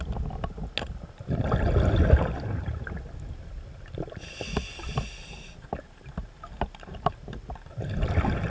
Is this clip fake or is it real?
real